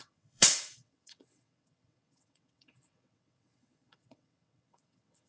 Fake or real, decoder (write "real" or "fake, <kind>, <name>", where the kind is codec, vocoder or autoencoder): fake, vocoder, WaveNeXt